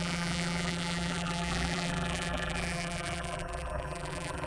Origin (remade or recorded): remade